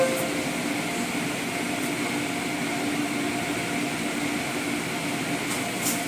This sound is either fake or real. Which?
real